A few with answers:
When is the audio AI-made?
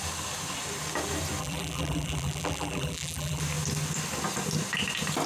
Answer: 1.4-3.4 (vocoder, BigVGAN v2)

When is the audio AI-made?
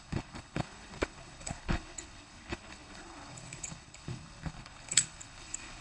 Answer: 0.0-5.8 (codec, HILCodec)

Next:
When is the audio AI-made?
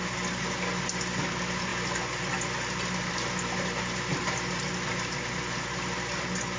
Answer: none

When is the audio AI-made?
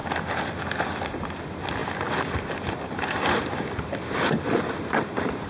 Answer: none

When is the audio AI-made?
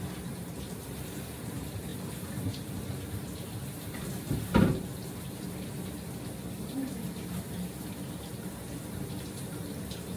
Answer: 0.0-10.2 (vocoder, BigVGAN v2)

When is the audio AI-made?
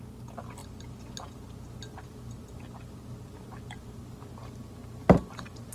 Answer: none